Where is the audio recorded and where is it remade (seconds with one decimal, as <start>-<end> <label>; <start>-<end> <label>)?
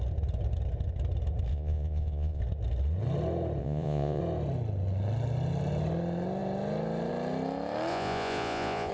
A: 0.0-1.5 recorded; 1.5-2.4 remade; 2.4-3.6 recorded; 3.6-4.2 remade; 4.2-7.9 recorded; 7.9-8.9 remade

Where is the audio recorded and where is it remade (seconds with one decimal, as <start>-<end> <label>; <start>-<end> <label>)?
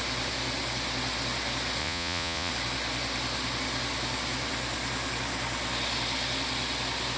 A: 0.0-1.8 recorded; 1.8-2.5 remade; 2.5-7.2 recorded